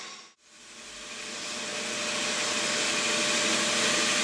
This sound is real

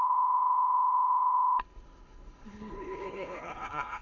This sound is fake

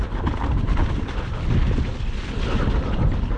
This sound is real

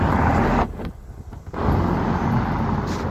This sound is real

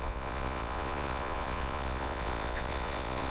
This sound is fake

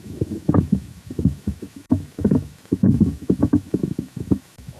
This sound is fake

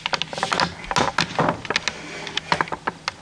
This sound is real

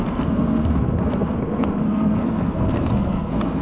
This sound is fake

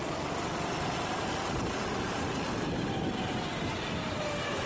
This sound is real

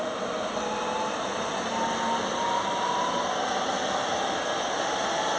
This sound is real